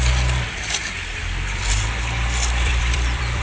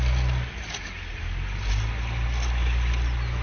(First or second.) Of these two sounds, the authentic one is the second